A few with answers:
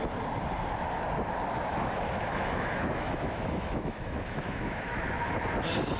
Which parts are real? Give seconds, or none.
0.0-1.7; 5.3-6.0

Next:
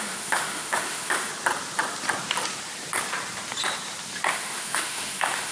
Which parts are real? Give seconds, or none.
1.3-4.3

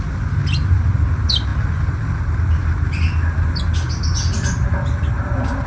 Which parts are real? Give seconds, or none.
0.0-5.7

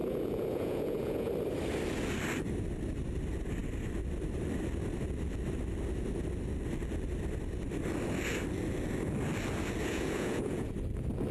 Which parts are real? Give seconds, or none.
1.3-9.9; 10.7-11.3

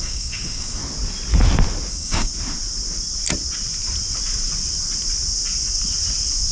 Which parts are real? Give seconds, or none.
0.8-1.9; 2.3-6.5

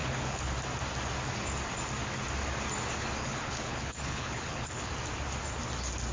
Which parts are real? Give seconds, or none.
0.5-3.2; 4.9-6.1

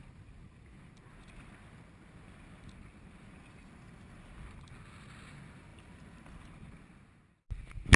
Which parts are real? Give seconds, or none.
0.0-3.6; 4.3-5.7; 6.5-8.0